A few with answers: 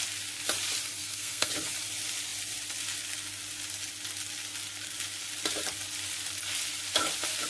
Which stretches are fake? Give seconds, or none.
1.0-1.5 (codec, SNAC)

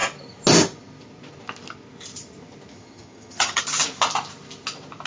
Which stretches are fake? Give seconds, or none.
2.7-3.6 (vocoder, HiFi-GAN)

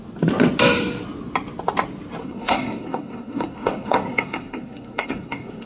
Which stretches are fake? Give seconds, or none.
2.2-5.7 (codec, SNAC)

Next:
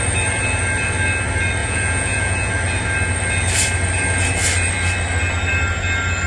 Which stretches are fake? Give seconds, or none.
1.6-2.5 (vocoder, Vocos)